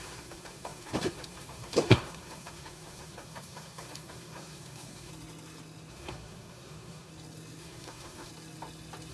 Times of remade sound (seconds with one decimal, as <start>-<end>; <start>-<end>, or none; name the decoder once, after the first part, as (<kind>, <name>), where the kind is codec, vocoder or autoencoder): 0.0-5.1 (codec, SNAC); 5.9-7.1; 7.6-8.3